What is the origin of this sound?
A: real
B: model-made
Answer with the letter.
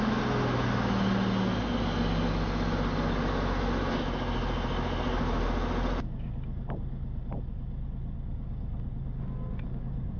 A